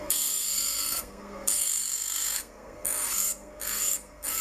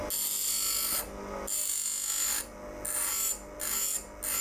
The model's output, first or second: first